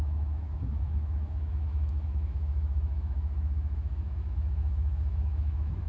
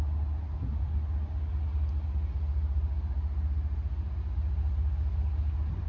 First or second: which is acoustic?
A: second